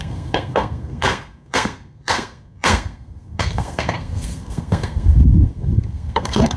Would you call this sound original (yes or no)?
no